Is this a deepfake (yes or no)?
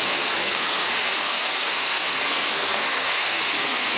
yes